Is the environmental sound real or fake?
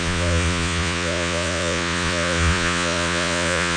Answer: fake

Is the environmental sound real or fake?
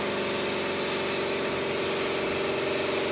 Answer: real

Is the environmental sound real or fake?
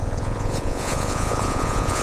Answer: fake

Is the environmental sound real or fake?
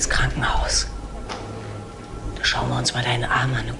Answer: real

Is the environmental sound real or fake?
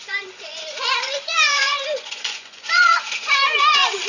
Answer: fake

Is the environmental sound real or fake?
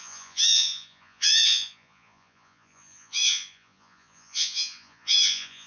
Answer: fake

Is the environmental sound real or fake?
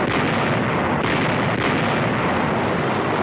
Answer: real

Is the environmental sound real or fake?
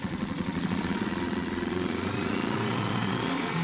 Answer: fake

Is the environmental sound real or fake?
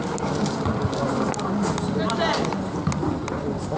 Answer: real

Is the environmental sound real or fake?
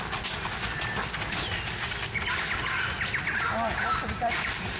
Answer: real